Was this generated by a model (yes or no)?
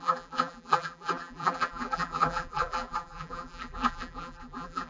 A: yes